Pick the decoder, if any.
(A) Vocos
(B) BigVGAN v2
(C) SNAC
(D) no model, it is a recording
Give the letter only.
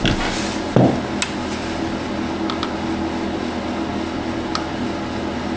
D